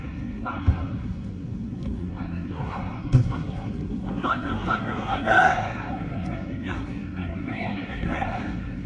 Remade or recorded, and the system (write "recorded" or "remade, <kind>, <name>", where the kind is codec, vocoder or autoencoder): remade, codec, SNAC